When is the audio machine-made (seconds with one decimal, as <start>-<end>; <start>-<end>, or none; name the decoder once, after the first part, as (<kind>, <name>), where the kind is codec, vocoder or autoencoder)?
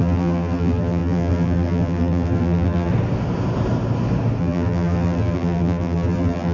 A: 0.0-2.9 (vocoder, BigVGAN v2); 4.4-6.5